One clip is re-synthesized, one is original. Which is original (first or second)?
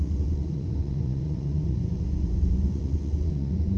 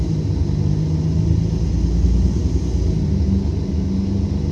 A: second